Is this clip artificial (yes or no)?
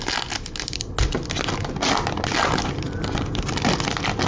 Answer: no